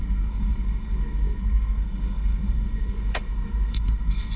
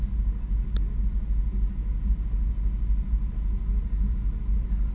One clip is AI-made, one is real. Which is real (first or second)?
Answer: second